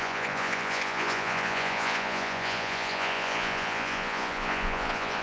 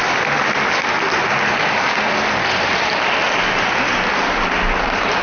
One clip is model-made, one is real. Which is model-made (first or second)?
first